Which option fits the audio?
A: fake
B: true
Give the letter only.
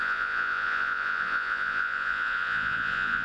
A